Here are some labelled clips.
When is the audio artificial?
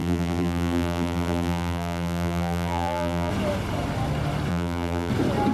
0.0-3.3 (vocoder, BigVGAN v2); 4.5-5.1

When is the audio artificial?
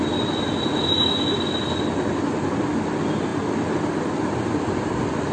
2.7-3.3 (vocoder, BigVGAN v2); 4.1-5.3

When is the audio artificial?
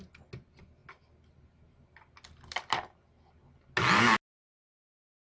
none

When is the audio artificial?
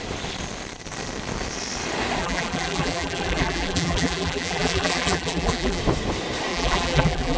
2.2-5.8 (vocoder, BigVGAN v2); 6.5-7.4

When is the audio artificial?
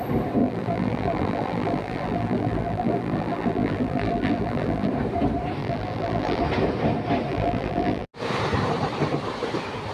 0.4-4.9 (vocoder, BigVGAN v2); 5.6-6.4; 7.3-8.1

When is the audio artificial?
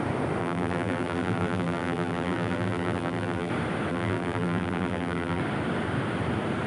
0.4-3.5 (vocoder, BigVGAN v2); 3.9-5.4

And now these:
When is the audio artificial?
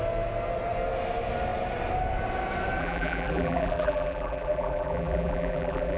2.8-6.0 (vocoder, BigVGAN v2)